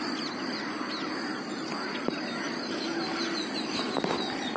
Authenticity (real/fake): real